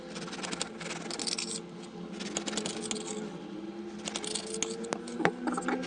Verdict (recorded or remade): recorded